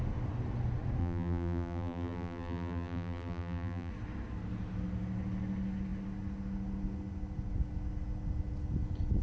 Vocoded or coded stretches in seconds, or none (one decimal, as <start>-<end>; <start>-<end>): 1.0-3.9